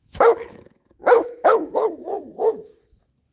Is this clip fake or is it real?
fake